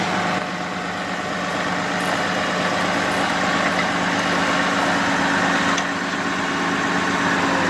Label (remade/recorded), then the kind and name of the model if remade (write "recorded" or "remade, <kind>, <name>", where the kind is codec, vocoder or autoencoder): recorded